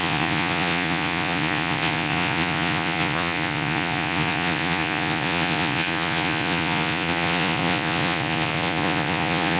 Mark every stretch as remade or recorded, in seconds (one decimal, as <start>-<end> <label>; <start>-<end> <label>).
0.0-9.6 remade